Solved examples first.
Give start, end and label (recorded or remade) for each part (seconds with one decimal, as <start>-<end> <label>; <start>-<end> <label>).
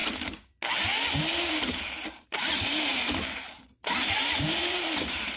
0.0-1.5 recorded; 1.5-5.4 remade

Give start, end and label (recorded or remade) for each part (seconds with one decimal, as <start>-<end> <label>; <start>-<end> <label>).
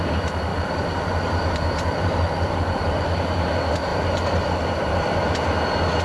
0.0-0.5 recorded; 0.5-3.1 remade; 3.1-3.9 recorded; 3.9-5.3 remade; 5.3-6.0 recorded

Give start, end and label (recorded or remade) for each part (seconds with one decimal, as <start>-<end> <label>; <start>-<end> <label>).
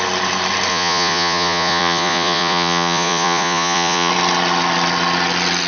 0.0-0.7 recorded; 0.7-4.1 remade; 4.1-5.7 recorded